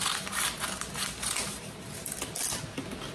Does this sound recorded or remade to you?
recorded